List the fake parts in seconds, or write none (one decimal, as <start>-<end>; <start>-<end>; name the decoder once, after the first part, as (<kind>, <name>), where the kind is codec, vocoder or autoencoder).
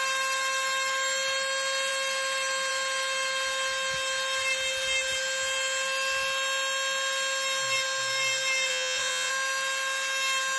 8.7-9.3 (vocoder, Vocos)